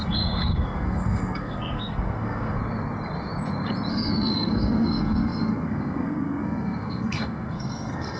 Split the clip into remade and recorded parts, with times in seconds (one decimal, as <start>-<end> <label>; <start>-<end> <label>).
0.0-2.6 remade; 2.6-3.9 recorded; 3.9-8.2 remade